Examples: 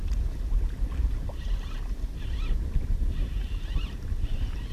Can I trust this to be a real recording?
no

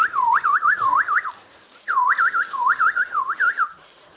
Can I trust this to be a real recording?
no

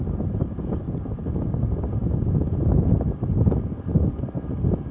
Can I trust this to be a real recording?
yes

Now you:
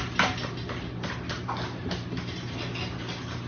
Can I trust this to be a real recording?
yes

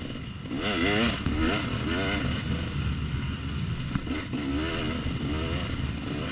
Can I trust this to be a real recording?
yes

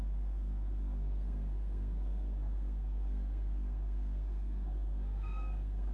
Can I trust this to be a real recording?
no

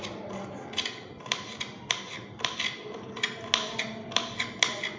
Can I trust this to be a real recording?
yes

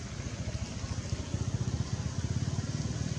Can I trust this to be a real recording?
yes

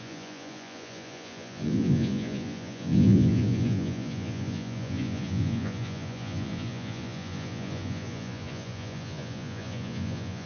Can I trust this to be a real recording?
no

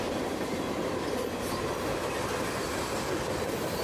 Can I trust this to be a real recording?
yes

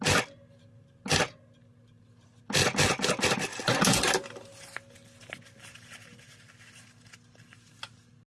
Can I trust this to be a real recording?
yes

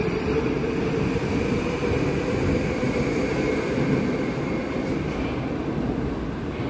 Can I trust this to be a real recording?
yes